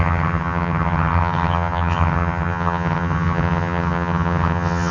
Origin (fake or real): fake